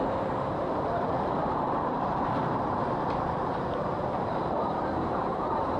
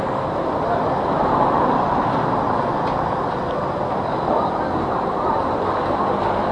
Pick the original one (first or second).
second